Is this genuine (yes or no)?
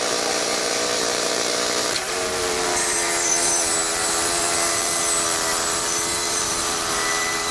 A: no